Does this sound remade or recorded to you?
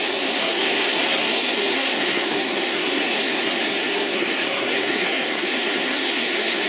remade